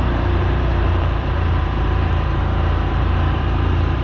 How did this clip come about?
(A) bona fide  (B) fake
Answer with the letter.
B